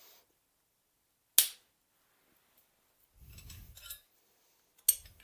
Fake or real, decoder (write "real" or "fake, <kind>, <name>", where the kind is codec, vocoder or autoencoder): real